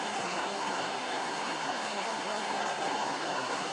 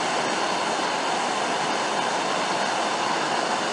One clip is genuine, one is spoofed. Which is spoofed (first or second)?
first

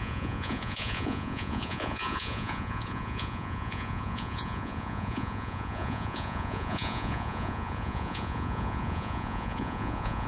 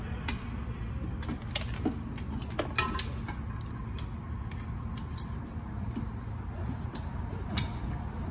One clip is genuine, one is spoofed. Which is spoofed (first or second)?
first